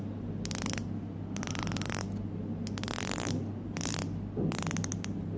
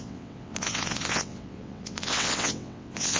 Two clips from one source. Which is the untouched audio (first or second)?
first